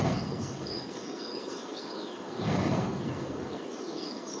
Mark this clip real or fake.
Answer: fake